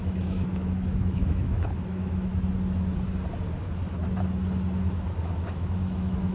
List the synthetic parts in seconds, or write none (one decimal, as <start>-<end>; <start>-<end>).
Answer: 0.0-2.3; 4.8-6.3